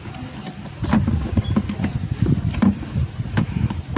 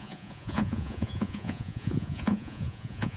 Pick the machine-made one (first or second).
second